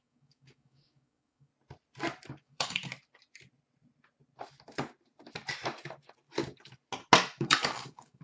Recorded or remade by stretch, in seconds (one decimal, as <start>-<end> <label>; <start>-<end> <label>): 0.0-1.5 remade; 1.5-2.3 recorded; 2.3-2.8 remade; 2.8-7.4 recorded; 7.4-8.2 remade